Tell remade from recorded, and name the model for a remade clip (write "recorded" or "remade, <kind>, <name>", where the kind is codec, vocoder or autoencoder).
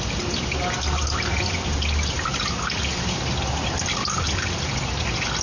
recorded